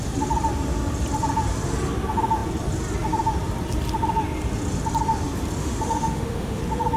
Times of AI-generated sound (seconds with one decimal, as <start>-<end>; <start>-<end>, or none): 5.6-6.6

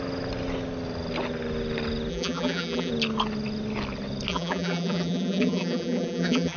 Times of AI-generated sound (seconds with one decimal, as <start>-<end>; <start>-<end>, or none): 2.1-2.9; 4.3-6.6

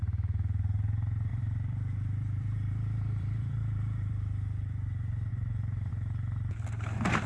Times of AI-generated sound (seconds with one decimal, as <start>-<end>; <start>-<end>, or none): 1.3-4.1; 5.3-5.9

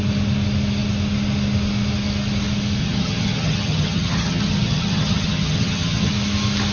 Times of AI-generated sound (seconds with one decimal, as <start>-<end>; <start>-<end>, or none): 2.8-6.1

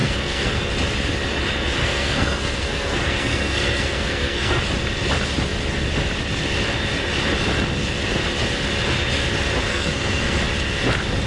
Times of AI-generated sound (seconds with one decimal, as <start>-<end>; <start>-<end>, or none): 0.0-0.6; 1.8-4.6; 9.7-10.4

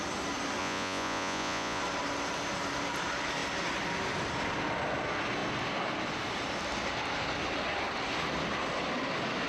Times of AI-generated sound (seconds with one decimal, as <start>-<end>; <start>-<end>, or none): 0.6-1.8

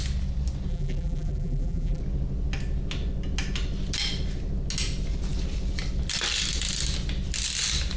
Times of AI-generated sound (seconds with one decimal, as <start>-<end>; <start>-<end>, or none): 0.7-2.0